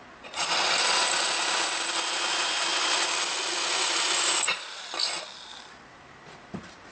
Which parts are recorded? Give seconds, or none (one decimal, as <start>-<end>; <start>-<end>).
0.4-1.0; 2.7-4.5; 5.0-5.5

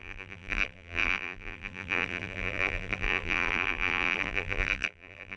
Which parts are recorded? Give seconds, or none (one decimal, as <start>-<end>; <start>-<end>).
none

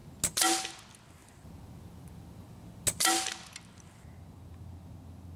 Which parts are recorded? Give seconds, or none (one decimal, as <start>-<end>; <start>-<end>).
0.0-5.4

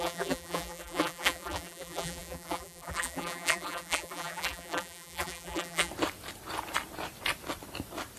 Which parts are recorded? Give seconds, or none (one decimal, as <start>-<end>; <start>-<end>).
5.9-8.2

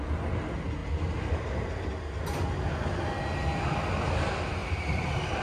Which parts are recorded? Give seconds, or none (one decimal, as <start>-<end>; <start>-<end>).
0.0-4.6

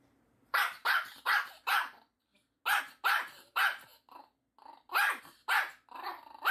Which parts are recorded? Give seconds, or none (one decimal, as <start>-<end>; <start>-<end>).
2.3-2.8; 3.9-5.2

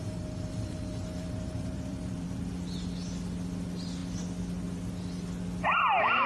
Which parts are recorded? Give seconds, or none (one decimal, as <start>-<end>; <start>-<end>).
2.5-6.3